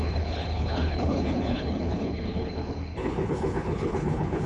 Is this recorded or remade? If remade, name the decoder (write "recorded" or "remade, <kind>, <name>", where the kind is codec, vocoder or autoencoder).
remade, codec, HILCodec